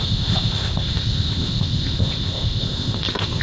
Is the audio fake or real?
fake